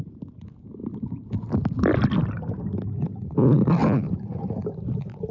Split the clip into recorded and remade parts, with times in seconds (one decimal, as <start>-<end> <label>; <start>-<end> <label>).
0.0-0.8 recorded; 0.8-2.2 remade; 2.2-3.8 recorded; 3.8-4.4 remade; 4.4-5.3 recorded